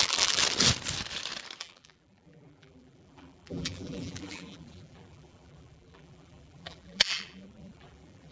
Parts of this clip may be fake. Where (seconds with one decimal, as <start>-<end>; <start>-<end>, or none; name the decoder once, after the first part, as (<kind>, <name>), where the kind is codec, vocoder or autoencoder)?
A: 0.0-0.4 (vocoder, BigVGAN v2); 1.6-8.3